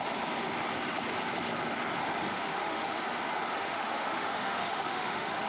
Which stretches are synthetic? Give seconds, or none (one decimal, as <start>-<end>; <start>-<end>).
2.3-3.0; 3.5-5.5